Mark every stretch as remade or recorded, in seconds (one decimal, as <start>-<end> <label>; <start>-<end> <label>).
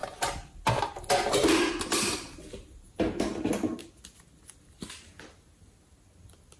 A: 0.0-6.6 recorded